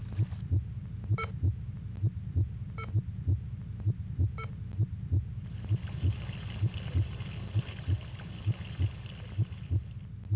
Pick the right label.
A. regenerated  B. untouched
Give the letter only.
B